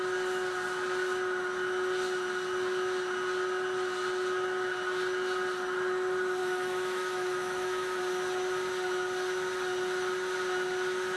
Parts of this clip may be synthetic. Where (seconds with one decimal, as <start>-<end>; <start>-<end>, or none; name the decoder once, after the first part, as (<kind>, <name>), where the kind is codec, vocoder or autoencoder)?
6.4-8.0 (autoencoder, DAC-VAE)